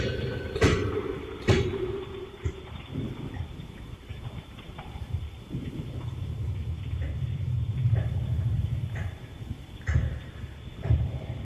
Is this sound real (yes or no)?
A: no